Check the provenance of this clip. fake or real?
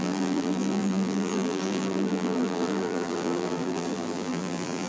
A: fake